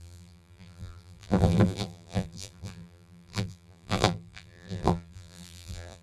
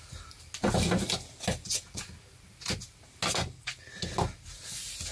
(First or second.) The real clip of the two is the second